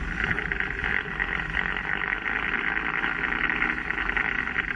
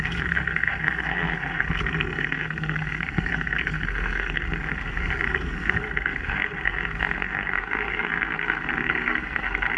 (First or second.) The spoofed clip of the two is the second